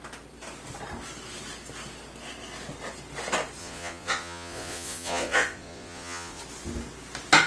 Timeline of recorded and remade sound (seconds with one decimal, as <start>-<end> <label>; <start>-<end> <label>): 0.0-3.6 recorded; 3.6-6.4 remade; 6.4-7.5 recorded